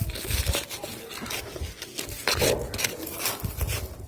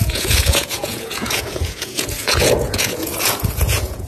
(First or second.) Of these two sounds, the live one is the first